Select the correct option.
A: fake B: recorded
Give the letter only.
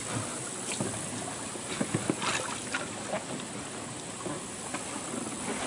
B